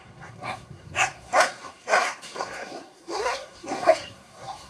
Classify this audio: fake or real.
fake